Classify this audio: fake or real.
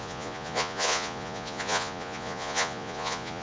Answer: fake